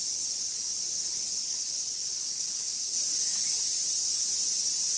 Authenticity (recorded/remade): recorded